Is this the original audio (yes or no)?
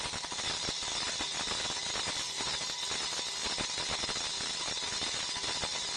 yes